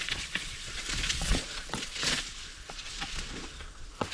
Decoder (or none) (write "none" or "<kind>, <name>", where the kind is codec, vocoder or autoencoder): vocoder, Vocos